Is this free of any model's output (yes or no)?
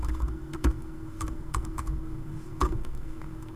no